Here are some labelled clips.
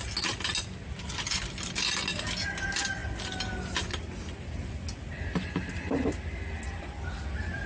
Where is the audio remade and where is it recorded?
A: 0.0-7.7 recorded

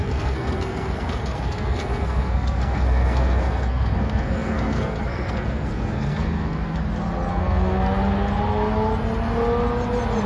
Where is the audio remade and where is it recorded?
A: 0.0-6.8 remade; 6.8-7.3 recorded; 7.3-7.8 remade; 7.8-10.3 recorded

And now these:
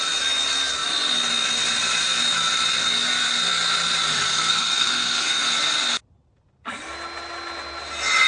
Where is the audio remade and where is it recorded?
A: 0.0-4.3 recorded; 4.3-5.4 remade; 5.4-8.3 recorded

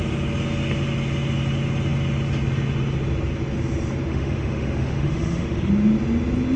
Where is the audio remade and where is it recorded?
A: 0.0-4.1 recorded; 4.1-5.7 remade; 5.7-6.6 recorded